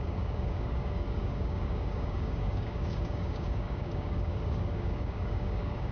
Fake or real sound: fake